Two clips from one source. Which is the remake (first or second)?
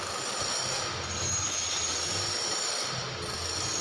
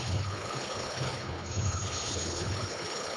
second